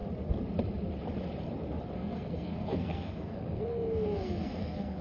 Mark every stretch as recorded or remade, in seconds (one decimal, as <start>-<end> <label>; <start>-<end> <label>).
0.0-1.9 recorded; 1.9-5.0 remade